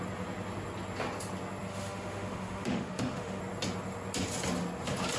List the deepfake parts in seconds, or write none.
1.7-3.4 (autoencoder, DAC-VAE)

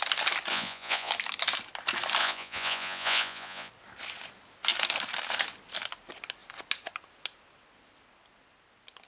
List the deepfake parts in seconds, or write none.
0.5-1.1 (vocoder, Vocos); 2.2-3.7

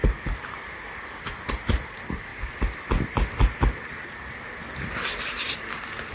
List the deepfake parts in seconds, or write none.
none